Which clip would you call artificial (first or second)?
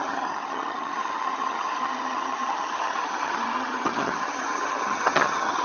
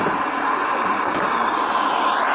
first